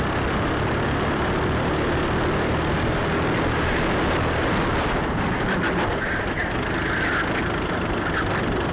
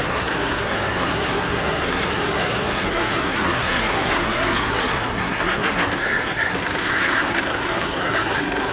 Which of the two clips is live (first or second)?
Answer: first